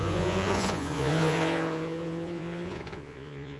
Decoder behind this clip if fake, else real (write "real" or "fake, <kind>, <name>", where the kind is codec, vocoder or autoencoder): fake, vocoder, Vocos